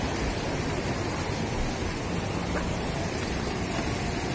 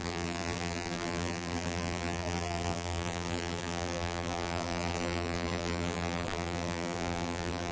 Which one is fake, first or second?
second